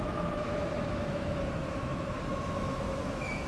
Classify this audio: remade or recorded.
remade